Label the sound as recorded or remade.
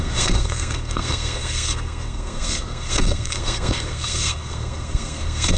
remade